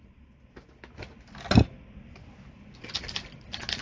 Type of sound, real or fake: real